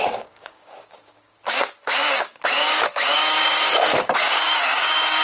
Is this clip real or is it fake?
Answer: fake